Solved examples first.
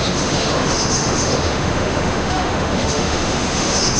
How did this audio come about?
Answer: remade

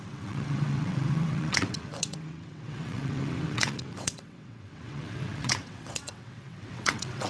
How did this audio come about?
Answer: remade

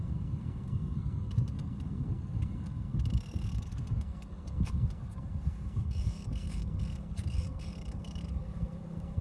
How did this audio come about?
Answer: remade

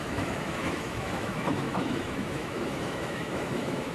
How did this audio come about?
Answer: remade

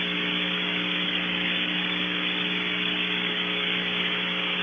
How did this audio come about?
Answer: remade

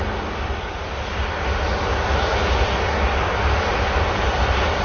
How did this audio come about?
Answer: recorded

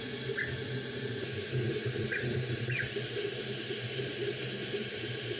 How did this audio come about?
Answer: recorded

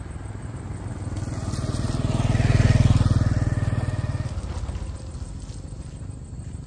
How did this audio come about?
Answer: recorded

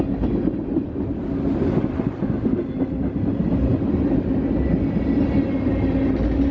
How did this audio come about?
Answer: recorded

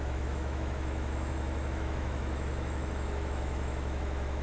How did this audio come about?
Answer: remade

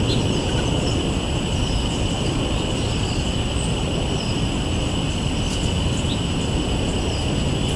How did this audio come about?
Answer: recorded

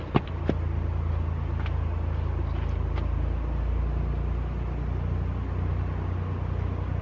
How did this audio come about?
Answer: recorded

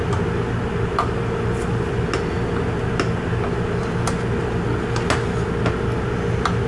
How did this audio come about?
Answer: recorded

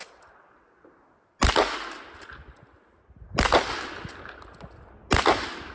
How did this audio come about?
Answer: recorded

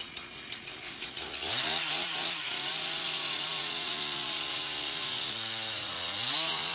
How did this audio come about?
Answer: remade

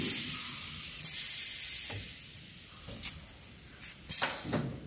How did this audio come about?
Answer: recorded